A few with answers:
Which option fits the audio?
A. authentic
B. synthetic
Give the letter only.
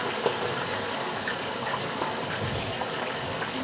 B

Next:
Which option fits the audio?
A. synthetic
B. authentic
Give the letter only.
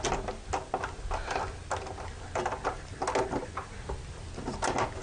B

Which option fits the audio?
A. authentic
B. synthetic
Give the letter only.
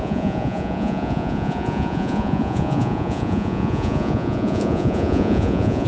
B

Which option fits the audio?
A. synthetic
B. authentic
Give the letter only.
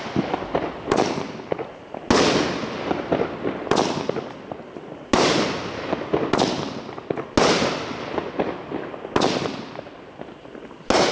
B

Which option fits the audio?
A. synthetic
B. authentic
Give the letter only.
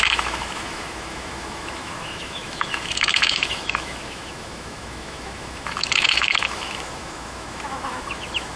A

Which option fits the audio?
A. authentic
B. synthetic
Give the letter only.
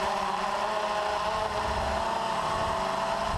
A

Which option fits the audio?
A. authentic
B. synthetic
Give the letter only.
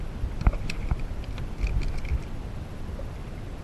A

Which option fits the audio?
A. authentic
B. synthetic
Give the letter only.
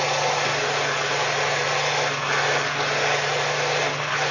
A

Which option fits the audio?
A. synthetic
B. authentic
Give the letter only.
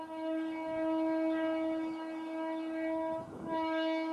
A